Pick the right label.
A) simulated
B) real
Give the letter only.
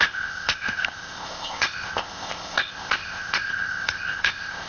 A